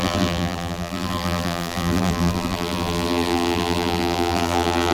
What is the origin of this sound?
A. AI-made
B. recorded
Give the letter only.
A